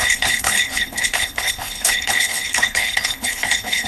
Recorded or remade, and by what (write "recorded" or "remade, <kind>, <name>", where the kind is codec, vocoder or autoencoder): remade, codec, HILCodec